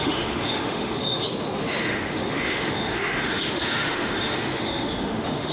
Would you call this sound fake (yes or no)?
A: yes